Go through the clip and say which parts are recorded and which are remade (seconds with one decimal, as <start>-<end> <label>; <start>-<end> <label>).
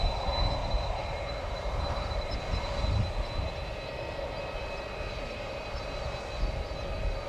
0.0-0.6 recorded; 0.6-2.4 remade; 2.4-7.3 recorded